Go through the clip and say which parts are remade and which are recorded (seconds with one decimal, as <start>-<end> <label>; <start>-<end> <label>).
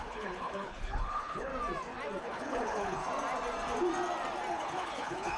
0.0-1.5 remade; 1.5-2.2 recorded; 2.2-3.0 remade; 3.0-4.5 recorded; 4.5-5.4 remade